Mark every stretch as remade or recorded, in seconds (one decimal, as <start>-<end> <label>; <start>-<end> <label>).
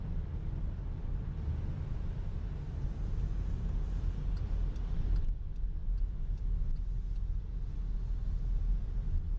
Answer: 0.0-9.4 recorded